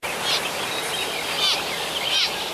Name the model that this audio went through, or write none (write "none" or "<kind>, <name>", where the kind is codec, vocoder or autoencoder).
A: none